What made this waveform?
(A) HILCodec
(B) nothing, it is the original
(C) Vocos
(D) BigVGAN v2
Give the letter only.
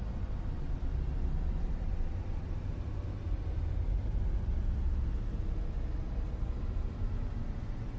B